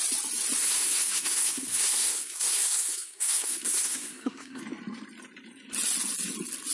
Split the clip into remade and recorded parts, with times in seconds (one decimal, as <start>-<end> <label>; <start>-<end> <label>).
0.0-0.6 recorded; 0.6-4.6 remade; 4.6-6.7 recorded

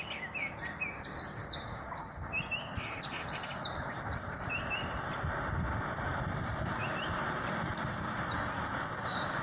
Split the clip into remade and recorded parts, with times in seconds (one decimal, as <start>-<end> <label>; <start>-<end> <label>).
0.0-3.5 recorded; 3.5-5.1 remade; 5.1-6.1 recorded; 6.1-6.9 remade; 6.9-9.4 recorded

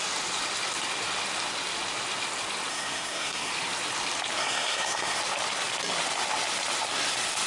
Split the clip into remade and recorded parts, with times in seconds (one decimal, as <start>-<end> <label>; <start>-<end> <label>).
0.0-2.7 recorded; 2.7-3.5 remade; 3.5-4.4 recorded; 4.4-5.2 remade; 5.2-7.5 recorded

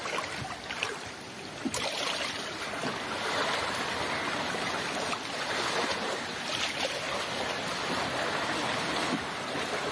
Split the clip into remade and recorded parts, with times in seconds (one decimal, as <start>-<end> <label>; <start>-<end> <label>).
0.0-9.9 recorded